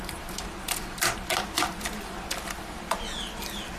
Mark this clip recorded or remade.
recorded